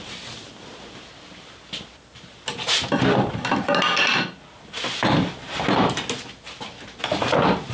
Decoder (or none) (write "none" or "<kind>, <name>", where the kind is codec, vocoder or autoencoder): none